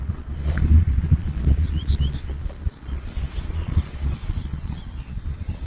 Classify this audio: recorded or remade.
remade